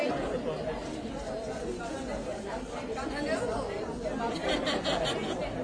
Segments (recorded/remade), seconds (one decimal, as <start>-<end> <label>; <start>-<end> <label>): 0.0-5.6 recorded